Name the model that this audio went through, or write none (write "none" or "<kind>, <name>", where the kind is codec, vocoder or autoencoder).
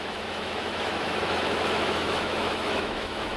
autoencoder, DAC-VAE